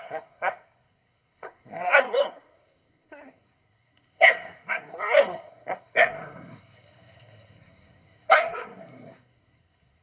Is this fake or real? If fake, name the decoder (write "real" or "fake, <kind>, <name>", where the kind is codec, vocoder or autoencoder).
fake, codec, SNAC